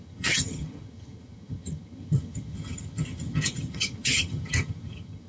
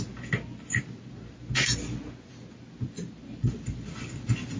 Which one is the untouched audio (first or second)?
second